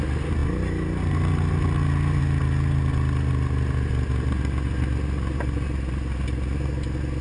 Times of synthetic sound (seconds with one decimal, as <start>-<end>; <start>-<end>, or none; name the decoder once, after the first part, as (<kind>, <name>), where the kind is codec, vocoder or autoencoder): none